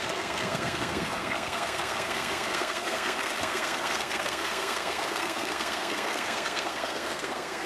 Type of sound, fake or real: fake